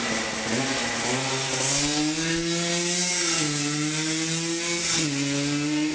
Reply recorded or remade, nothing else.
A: recorded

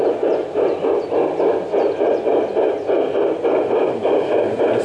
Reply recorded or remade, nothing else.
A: recorded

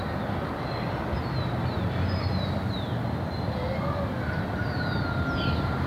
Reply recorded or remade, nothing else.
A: recorded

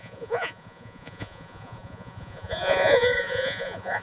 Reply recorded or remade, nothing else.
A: remade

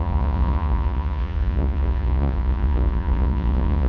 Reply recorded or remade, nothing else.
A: remade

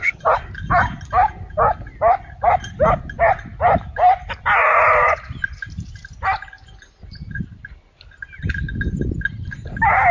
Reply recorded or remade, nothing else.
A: recorded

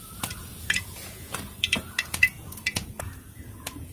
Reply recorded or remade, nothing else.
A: remade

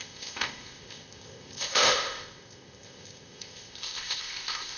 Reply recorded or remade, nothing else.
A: remade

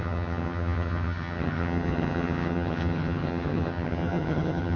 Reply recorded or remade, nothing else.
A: remade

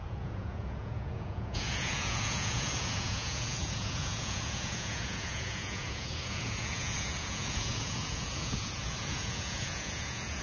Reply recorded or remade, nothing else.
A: remade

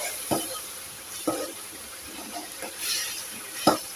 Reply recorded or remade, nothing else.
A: remade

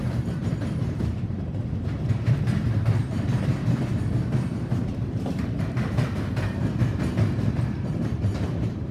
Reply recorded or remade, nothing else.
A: remade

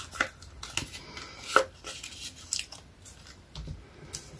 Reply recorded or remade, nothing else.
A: recorded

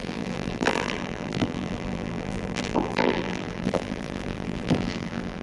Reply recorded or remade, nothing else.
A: remade